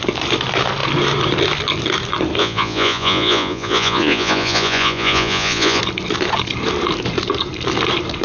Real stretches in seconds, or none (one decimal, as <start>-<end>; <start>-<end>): 0.0-2.4; 5.8-8.2